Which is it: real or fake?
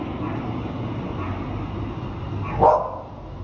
real